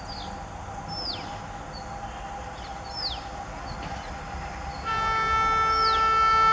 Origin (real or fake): real